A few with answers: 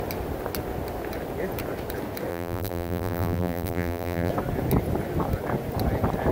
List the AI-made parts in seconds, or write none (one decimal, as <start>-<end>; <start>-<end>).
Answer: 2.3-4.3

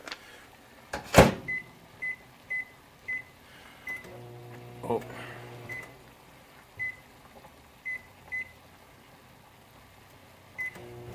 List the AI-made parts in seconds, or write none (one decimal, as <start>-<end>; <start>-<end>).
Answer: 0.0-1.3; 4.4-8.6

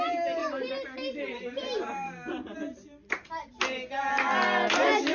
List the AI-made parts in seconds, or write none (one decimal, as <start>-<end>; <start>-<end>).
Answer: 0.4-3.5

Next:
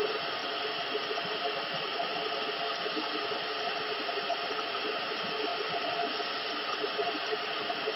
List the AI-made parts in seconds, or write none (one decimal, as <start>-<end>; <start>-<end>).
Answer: 0.0-0.4; 0.9-2.1; 3.9-5.5; 6.5-8.0

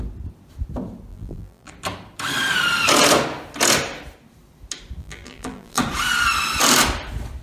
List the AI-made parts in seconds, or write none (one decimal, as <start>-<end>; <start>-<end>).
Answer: 1.1-1.7; 5.0-5.8